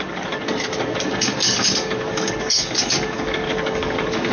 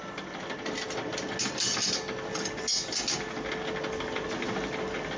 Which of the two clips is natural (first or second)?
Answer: second